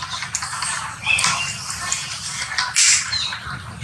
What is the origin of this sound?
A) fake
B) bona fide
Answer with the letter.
B